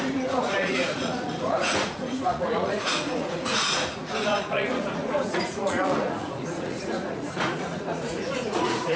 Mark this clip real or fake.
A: fake